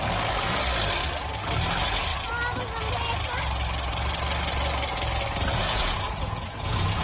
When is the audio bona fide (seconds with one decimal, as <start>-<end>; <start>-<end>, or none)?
0.0-5.6